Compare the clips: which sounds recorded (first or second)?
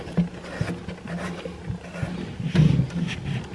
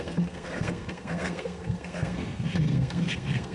first